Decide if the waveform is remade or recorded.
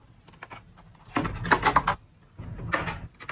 recorded